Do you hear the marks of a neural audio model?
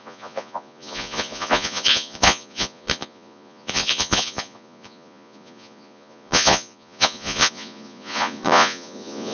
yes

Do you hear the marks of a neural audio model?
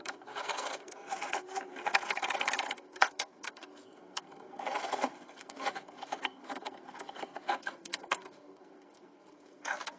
yes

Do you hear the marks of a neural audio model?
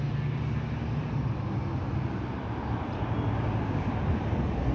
no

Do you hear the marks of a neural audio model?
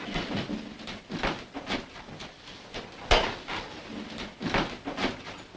no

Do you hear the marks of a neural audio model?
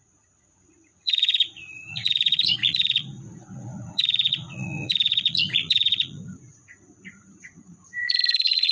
yes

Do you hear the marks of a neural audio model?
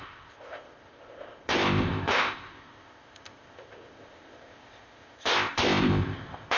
yes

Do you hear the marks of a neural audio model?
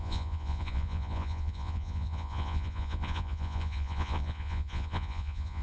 yes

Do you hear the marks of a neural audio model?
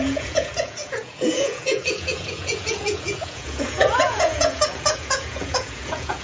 yes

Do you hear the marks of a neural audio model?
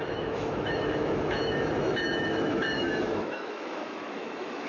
yes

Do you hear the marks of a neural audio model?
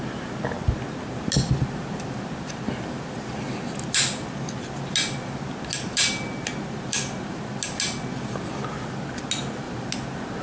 no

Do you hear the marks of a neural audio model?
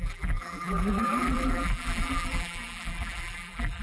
yes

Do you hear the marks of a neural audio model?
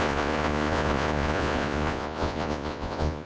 yes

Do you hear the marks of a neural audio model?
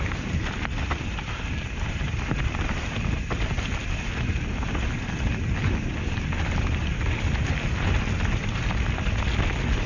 no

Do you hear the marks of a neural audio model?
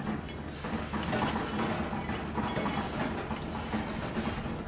no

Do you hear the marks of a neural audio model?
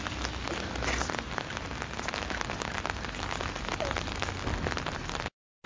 no